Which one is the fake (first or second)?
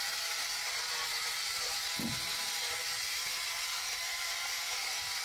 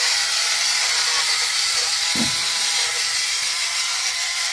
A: second